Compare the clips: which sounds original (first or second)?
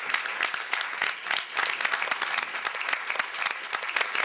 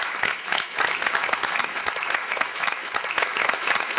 first